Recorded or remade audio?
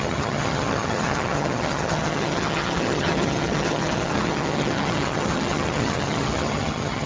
remade